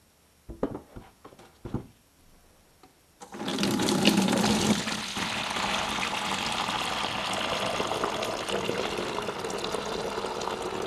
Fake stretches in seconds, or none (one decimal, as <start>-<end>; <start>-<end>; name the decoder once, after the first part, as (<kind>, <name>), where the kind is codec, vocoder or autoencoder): 3.5-4.4 (vocoder, BigVGAN v2)